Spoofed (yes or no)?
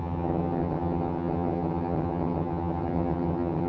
yes